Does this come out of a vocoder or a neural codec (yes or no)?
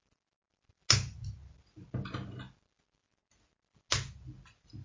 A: no